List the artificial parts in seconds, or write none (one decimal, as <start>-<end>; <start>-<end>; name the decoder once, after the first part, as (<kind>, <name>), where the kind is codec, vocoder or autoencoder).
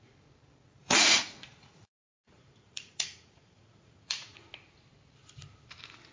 0.8-4.5 (vocoder, Vocos)